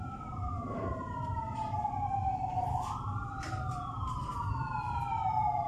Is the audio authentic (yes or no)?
yes